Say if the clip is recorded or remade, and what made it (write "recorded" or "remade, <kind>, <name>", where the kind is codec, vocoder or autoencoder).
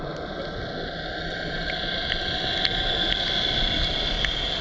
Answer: recorded